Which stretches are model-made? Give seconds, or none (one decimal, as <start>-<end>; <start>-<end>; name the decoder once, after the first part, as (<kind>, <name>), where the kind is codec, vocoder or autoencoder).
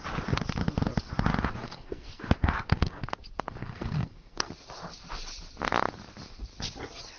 1.6-3.0 (codec, SNAC); 3.6-4.5